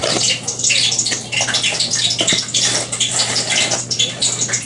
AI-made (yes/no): no